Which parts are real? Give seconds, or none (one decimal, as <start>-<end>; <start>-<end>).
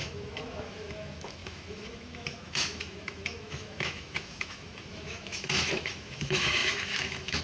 none